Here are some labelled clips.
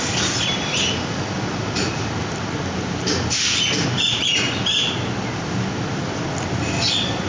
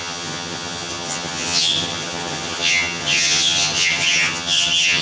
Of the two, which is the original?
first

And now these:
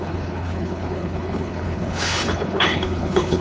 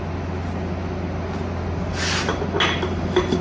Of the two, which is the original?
second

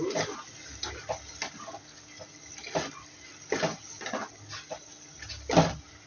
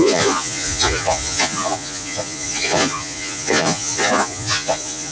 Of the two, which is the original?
first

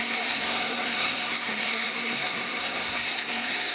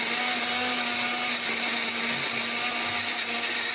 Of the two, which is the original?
second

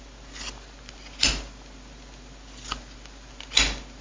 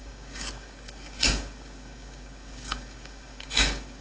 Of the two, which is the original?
first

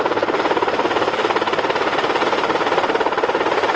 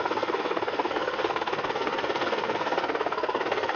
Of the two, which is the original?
first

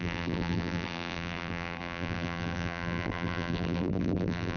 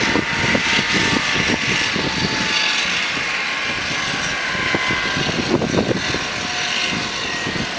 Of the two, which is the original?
second